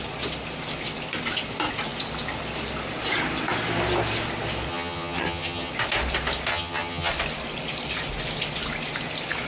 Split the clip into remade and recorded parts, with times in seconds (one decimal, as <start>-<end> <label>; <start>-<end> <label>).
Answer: 0.0-4.7 recorded; 4.7-5.7 remade; 5.7-6.5 recorded; 6.5-7.1 remade; 7.1-9.5 recorded

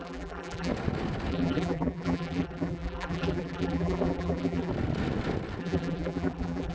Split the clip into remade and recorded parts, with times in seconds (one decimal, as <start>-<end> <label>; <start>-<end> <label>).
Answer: 0.0-0.7 remade; 0.7-1.3 recorded; 1.3-4.7 remade; 4.7-5.6 recorded; 5.6-6.7 remade

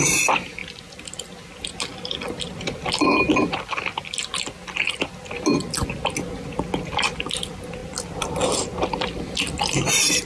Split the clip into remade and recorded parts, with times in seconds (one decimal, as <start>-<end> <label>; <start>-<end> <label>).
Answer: 0.0-10.3 recorded

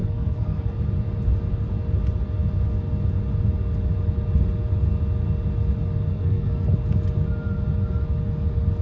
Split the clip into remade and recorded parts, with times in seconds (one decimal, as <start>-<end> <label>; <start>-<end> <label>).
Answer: 0.0-0.7 remade; 0.7-6.1 recorded; 6.1-6.7 remade; 6.7-8.8 recorded

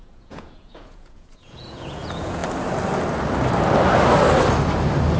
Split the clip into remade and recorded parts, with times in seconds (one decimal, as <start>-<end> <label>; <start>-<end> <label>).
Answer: 0.0-2.4 remade; 2.4-5.2 recorded

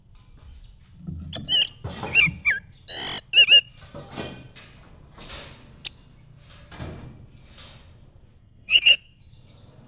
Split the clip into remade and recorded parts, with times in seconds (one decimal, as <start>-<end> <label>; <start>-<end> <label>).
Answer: 0.0-8.4 recorded; 8.4-9.2 remade; 9.2-9.9 recorded